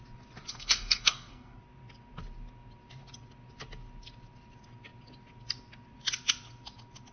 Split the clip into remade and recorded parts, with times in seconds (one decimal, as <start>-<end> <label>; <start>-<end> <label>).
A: 0.0-0.5 recorded; 0.5-1.6 remade; 1.6-7.1 recorded

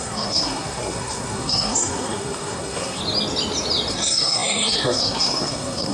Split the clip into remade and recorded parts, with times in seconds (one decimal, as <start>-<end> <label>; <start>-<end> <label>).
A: 0.0-3.0 remade; 3.0-3.9 recorded; 3.9-5.9 remade

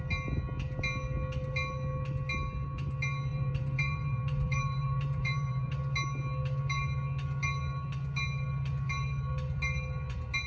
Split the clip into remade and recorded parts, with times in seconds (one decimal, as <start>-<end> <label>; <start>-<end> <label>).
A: 0.0-3.3 recorded; 3.3-5.7 remade; 5.7-10.5 recorded

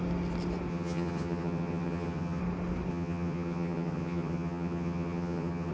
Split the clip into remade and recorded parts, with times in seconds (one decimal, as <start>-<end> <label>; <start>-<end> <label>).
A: 0.0-0.7 recorded; 0.7-2.4 remade; 2.4-2.9 recorded; 2.9-5.7 remade

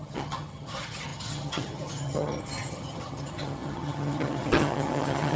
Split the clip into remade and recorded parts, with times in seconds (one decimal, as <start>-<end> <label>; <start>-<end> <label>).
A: 0.0-5.4 remade